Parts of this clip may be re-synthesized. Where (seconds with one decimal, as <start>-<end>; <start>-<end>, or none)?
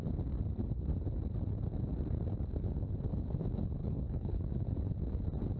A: 3.8-4.4